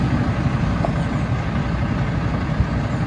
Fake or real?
real